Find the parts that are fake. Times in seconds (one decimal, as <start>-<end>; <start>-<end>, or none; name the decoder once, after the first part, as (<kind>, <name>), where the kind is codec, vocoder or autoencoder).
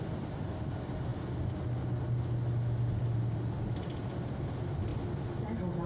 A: none